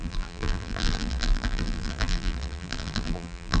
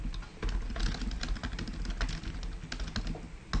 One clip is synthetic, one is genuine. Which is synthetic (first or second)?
first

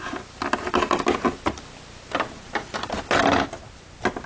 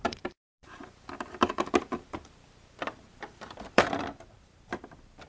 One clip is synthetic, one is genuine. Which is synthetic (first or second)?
second